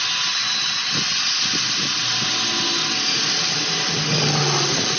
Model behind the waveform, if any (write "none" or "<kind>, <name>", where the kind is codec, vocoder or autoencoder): none